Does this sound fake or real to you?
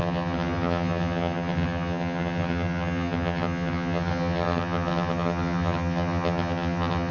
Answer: fake